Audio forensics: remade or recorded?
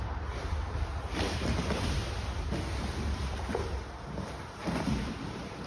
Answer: recorded